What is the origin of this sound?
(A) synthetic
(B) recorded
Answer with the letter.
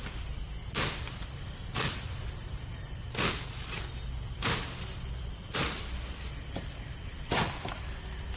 B